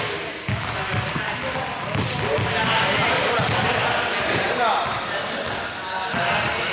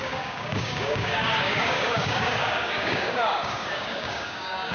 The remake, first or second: second